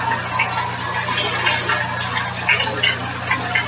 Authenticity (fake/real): real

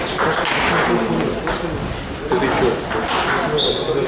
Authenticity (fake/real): real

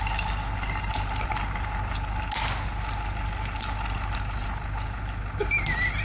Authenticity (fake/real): real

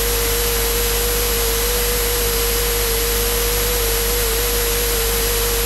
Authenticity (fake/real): real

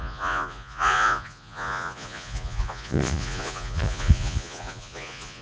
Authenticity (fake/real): fake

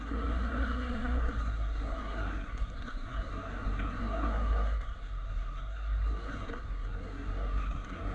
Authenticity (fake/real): fake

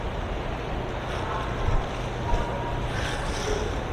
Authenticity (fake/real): real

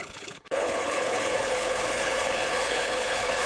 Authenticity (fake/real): fake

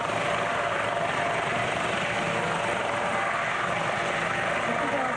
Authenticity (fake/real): fake